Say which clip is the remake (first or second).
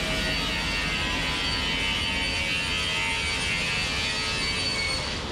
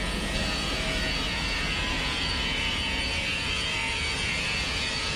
second